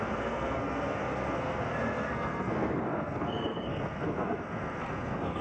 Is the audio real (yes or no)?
no